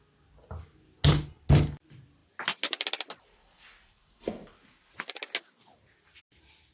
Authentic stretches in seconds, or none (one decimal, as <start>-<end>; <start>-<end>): 0.0-6.7

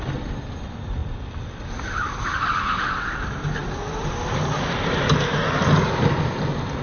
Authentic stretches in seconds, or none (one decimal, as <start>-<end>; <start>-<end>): 0.0-6.8

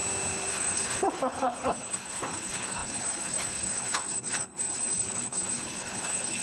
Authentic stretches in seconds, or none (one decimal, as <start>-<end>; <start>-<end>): 0.0-0.5